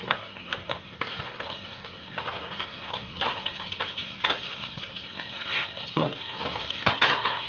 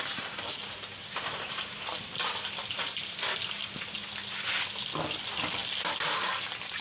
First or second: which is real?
second